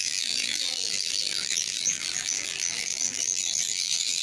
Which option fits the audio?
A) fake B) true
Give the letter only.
A